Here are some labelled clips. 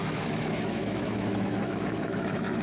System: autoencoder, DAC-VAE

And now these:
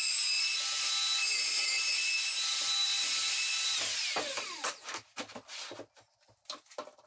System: none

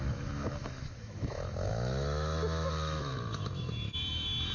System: autoencoder, DAC-VAE